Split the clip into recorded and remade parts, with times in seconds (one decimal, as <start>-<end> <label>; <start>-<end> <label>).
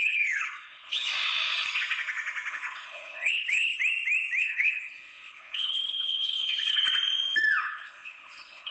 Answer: 0.0-1.1 remade; 1.1-2.5 recorded; 2.5-3.8 remade; 3.8-4.4 recorded; 4.4-6.8 remade; 6.8-7.6 recorded; 7.6-8.7 remade